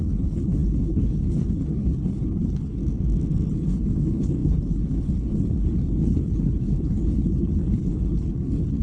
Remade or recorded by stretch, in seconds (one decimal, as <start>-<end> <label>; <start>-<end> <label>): 0.0-2.8 remade; 2.8-3.5 recorded; 3.5-8.8 remade